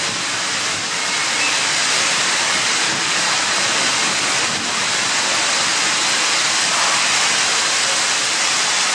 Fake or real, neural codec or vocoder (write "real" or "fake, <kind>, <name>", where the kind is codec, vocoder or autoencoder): real